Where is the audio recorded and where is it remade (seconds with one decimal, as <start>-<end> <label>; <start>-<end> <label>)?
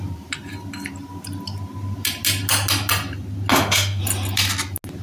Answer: 0.0-3.5 recorded; 3.5-4.0 remade; 4.0-5.0 recorded